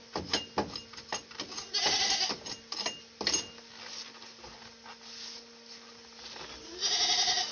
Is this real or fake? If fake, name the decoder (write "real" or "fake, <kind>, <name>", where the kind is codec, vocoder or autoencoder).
real